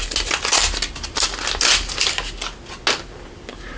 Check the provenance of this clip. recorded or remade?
recorded